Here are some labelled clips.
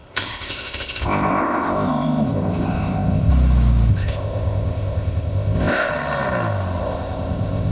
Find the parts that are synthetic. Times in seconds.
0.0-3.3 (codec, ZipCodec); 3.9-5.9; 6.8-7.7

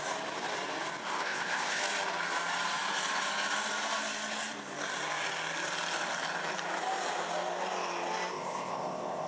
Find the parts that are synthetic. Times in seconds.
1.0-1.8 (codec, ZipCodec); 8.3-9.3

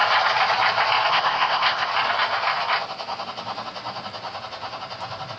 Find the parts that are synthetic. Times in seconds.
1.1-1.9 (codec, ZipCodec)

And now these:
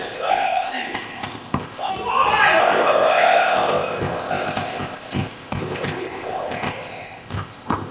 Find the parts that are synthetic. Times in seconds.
0.0-1.9 (codec, ZipCodec); 2.6-7.9

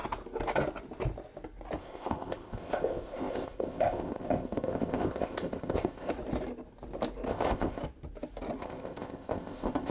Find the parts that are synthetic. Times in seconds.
1.8-6.1 (codec, ZipCodec); 7.3-7.8; 8.6-9.9

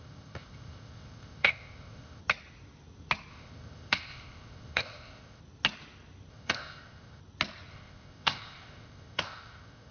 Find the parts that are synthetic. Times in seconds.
0.0-2.2 (codec, ZipCodec); 3.3-5.4; 6.3-7.2; 7.7-9.9

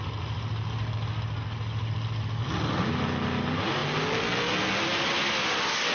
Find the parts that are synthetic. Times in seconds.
none

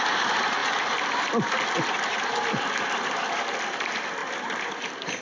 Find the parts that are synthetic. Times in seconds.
none